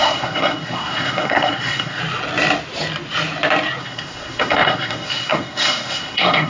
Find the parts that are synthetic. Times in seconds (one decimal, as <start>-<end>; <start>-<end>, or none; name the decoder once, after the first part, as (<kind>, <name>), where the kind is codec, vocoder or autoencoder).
0.0-2.0 (codec, SNAC); 3.8-6.5